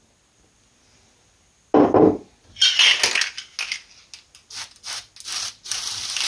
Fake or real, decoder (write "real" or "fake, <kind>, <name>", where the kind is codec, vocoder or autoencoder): real